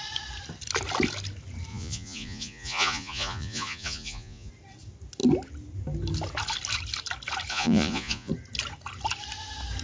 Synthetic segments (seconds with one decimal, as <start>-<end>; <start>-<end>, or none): 1.7-4.5; 7.5-8.3